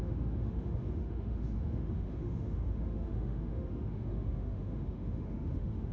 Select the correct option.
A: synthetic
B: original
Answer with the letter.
A